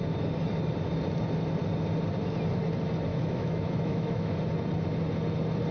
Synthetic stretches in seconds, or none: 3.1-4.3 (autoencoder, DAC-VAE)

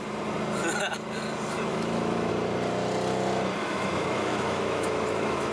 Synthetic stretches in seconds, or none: 1.7-2.3 (autoencoder, DAC-VAE); 3.6-5.5

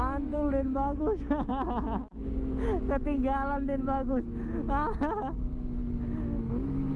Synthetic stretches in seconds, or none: 0.0-5.5 (autoencoder, DAC-VAE); 6.4-7.0

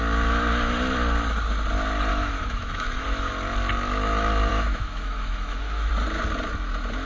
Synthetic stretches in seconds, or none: 2.1-3.3 (autoencoder, DAC-VAE); 4.5-5.9

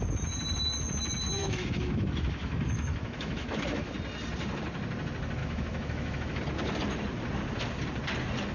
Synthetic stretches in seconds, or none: 1.4-3.9 (autoencoder, DAC-VAE); 5.4-6.4

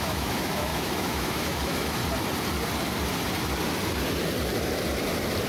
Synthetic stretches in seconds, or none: 0.0-2.0 (autoencoder, DAC-VAE)

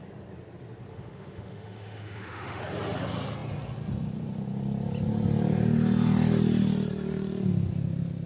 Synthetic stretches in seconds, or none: 0.9-2.6 (autoencoder, DAC-VAE)

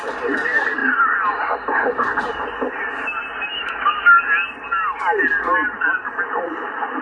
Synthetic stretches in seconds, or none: 3.5-4.2 (autoencoder, DAC-VAE)